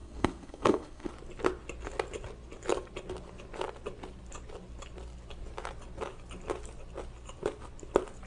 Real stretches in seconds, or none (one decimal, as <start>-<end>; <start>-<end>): 1.1-8.3